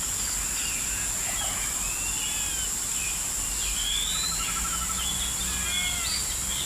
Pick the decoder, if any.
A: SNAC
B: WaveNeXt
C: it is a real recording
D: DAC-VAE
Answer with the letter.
C